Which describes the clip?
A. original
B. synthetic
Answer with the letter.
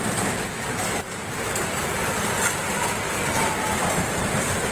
B